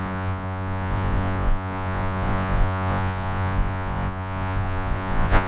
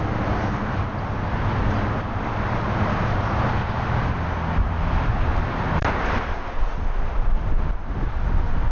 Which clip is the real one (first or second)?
second